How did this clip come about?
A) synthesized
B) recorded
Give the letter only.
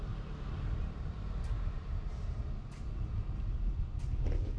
B